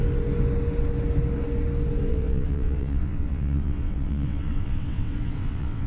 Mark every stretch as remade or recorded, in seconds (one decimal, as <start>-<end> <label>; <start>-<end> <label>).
0.0-2.1 recorded; 2.1-5.9 remade